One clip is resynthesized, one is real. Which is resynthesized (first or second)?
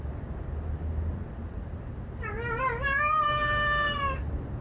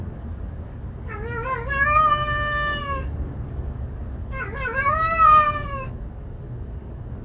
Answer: second